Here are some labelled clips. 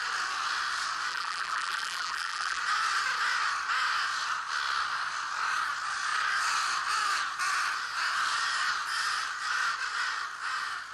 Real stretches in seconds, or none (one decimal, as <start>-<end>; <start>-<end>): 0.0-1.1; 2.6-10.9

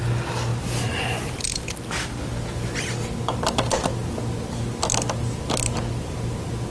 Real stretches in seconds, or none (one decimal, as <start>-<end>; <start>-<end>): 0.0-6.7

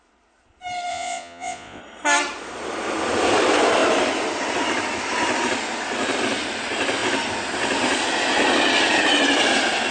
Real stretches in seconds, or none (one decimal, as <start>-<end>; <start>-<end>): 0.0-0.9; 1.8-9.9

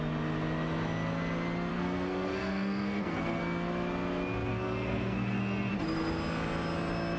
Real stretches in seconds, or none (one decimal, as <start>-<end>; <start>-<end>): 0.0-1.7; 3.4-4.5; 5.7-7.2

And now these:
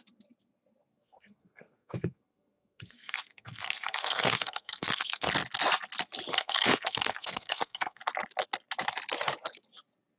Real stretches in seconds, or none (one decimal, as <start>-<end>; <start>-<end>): 0.0-0.9; 5.3-6.3; 8.0-10.2